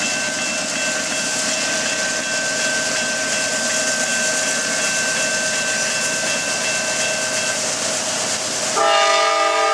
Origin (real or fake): real